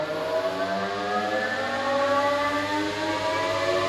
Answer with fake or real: real